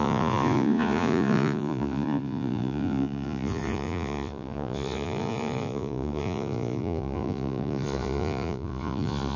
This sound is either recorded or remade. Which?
remade